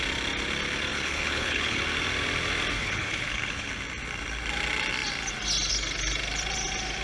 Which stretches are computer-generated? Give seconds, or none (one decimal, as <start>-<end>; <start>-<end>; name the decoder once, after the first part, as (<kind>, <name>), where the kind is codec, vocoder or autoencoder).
0.9-1.8 (codec, HILCodec); 2.8-3.7